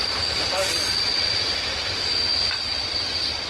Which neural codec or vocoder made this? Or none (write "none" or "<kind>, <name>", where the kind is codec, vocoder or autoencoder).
none